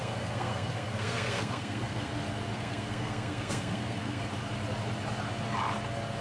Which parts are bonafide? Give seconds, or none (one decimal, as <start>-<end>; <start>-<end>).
2.1-2.5; 4.2-6.2